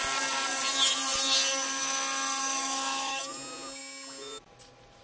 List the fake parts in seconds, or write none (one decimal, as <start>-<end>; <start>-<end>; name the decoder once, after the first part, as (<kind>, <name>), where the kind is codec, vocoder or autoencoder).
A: 2.4-3.2 (autoencoder, DAC-VAE)